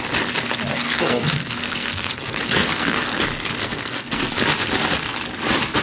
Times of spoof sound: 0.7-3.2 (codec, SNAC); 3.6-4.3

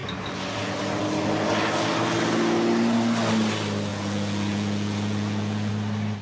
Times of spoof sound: 3.9-5.7 (vocoder, Vocos)

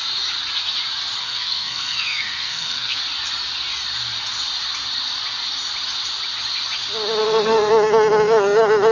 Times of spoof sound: 1.2-3.0 (codec, SNAC); 7.2-7.7

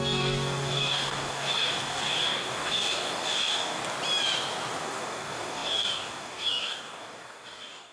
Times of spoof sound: 0.0-3.8 (codec, DAC); 4.8-7.9

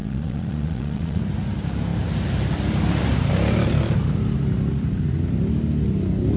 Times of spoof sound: 0.0-1.2 (vocoder, Vocos)